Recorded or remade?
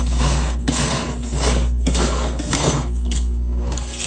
remade